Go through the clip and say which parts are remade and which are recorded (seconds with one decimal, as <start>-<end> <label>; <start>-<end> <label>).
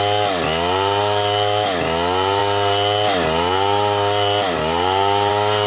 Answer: 0.0-5.7 recorded